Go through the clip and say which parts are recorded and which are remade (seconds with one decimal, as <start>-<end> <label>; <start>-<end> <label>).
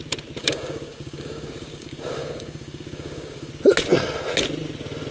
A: 0.0-0.4 recorded; 0.4-3.5 remade; 3.5-5.1 recorded